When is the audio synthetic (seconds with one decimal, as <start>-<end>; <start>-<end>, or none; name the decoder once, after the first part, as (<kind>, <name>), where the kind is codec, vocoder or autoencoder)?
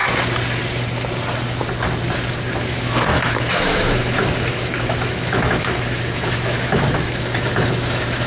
2.6-8.3 (autoencoder, DAC-VAE)